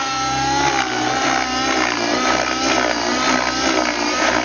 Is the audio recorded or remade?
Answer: recorded